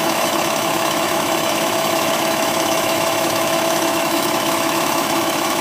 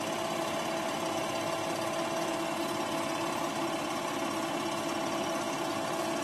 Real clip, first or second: second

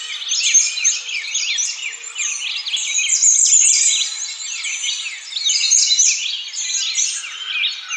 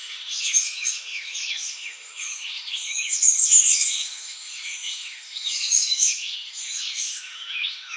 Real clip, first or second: first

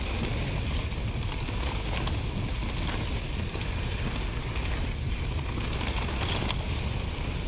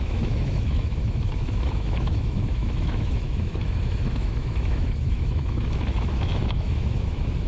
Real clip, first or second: first